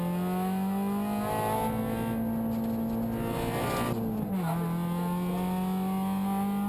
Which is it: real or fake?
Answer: real